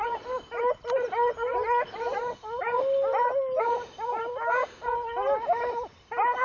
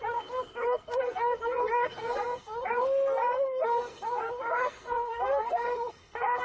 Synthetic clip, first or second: second